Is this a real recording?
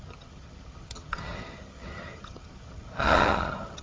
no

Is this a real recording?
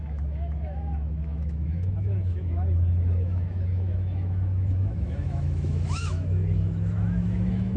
no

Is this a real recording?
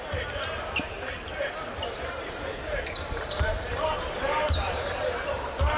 no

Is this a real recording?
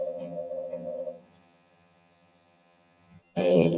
no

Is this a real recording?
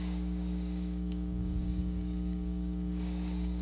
no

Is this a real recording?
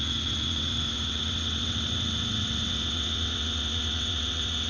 no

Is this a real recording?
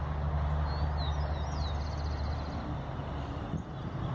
yes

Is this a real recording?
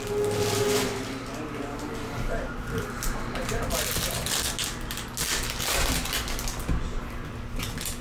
yes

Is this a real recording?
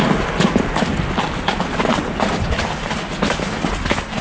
yes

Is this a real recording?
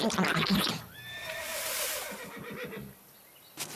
yes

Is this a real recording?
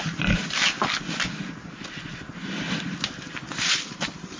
yes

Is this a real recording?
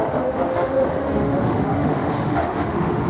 no